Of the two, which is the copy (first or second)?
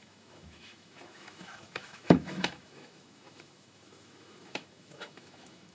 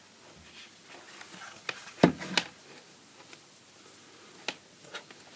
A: first